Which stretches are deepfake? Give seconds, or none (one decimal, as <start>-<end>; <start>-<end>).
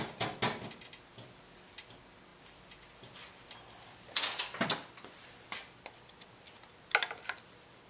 none